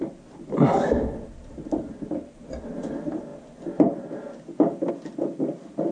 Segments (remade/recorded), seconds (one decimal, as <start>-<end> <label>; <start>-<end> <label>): 0.0-3.3 remade; 3.3-4.9 recorded; 4.9-5.9 remade

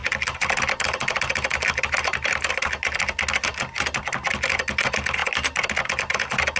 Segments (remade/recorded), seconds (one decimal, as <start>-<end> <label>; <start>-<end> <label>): 0.0-6.6 recorded

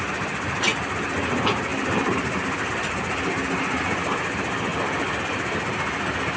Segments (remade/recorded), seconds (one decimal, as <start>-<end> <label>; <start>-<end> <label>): 0.0-1.7 recorded; 1.7-2.7 remade; 2.7-6.4 recorded